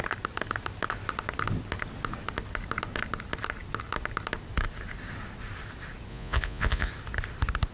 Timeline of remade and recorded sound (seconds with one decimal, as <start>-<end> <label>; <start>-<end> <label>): 0.0-6.1 recorded; 6.1-6.9 remade; 6.9-7.7 recorded